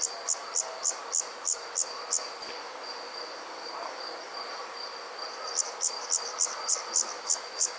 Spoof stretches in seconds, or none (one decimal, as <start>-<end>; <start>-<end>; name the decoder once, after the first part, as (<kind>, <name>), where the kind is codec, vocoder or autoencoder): none